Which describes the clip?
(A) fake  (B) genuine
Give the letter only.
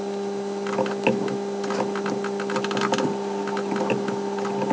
B